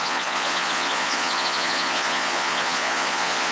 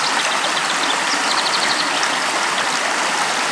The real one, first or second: second